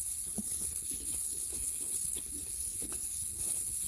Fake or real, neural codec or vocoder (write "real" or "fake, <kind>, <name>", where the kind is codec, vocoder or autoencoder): fake, codec, HILCodec